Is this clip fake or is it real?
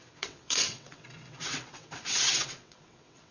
fake